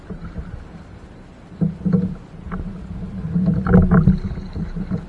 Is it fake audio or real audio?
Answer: real